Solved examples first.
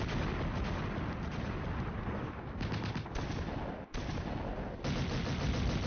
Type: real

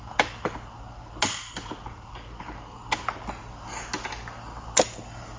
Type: real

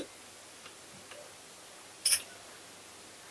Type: real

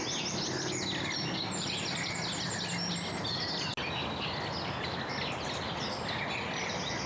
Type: real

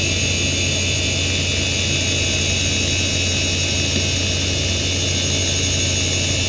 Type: real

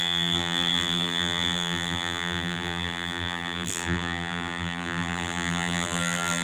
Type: fake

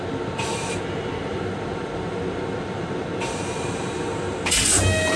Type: fake